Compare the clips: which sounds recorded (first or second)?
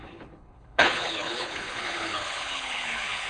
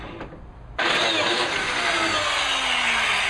second